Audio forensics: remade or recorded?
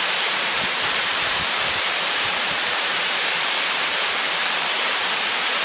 remade